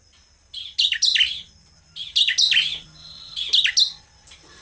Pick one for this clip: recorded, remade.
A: recorded